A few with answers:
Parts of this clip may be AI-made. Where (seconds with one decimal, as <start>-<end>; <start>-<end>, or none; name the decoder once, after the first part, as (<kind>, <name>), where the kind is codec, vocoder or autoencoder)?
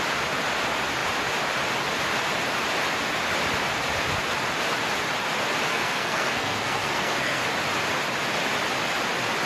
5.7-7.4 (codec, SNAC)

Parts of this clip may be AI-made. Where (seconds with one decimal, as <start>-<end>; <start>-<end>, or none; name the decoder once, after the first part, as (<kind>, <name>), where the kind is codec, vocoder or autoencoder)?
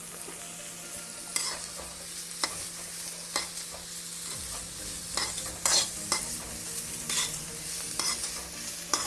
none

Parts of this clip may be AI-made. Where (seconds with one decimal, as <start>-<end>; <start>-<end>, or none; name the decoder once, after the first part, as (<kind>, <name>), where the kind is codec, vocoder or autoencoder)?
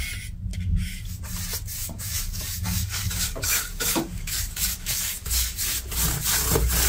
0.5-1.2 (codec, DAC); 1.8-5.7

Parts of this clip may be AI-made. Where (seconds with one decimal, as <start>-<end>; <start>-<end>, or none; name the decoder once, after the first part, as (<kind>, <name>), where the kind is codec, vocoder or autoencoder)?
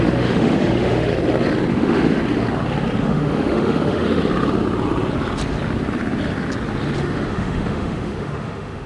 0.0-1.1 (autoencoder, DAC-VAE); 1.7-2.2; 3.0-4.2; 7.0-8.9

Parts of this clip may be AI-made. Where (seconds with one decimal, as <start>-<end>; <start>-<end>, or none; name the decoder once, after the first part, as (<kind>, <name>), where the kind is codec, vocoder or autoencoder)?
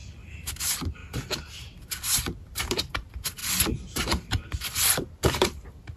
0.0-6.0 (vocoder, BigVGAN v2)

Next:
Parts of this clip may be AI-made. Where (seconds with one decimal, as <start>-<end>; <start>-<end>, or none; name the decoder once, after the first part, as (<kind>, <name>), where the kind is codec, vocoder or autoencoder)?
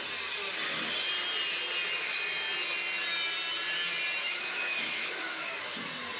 4.2-5.7 (autoencoder, DAC-VAE)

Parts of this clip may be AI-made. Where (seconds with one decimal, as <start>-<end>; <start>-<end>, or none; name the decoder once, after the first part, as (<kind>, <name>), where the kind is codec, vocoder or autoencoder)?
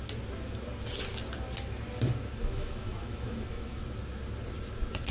2.4-3.8 (autoencoder, DAC-VAE)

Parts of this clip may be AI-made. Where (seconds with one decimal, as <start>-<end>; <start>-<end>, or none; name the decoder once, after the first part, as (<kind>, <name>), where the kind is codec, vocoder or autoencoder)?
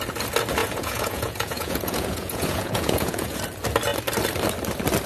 0.6-3.4 (vocoder, Vocos)